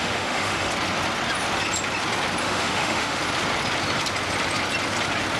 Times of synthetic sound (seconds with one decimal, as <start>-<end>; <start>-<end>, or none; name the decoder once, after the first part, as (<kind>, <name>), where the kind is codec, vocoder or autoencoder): 0.0-0.7 (autoencoder, DAC-VAE); 2.4-3.2